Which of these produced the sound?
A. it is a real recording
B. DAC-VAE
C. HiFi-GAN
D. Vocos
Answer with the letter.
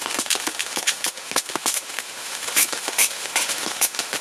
B